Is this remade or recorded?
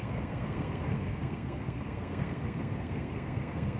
remade